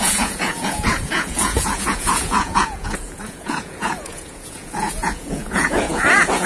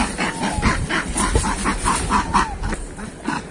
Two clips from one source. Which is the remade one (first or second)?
first